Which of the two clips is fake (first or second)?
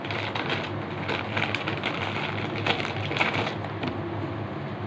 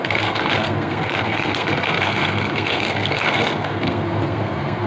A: second